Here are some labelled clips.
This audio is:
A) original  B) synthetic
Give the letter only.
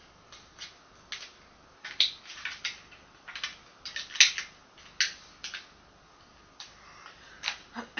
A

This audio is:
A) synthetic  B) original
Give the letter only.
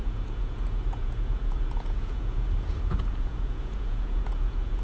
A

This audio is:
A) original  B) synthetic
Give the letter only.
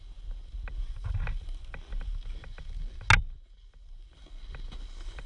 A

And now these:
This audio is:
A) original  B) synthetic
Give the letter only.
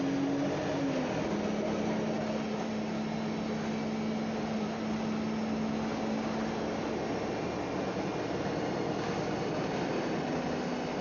A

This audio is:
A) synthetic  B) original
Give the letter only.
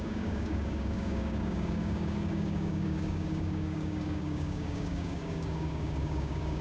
A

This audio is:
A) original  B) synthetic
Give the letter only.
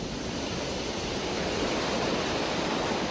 B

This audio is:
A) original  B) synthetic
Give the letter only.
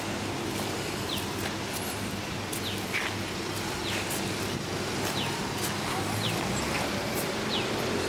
A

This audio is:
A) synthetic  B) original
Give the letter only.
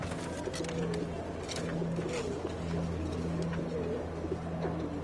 B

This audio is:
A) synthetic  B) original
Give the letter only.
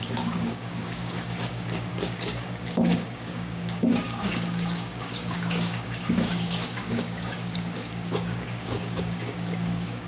A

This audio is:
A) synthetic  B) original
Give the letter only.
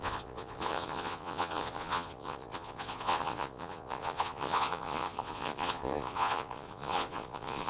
A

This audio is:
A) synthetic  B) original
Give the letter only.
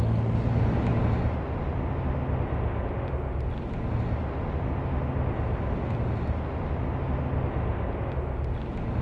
B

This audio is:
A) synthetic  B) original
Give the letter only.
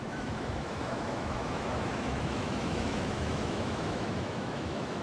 A